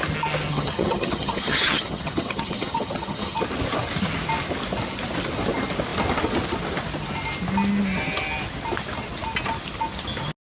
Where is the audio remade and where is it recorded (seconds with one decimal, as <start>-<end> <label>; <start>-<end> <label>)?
0.0-0.5 recorded; 0.5-3.4 remade; 3.4-10.4 recorded